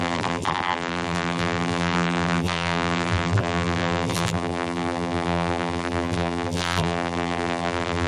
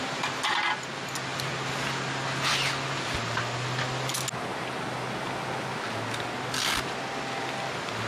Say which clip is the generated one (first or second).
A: first